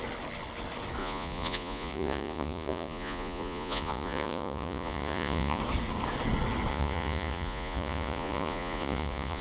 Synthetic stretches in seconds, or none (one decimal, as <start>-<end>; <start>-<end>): 1.0-5.6; 6.7-9.4